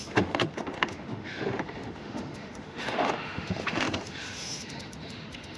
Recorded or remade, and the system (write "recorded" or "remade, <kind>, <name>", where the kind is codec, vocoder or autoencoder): remade, autoencoder, DAC-VAE